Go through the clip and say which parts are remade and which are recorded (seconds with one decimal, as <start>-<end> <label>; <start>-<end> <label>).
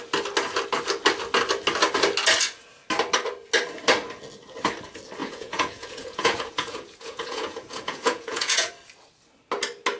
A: 0.0-5.2 recorded; 5.2-8.7 remade; 8.7-10.0 recorded